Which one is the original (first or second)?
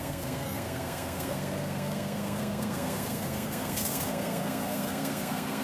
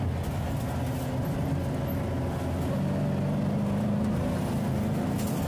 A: second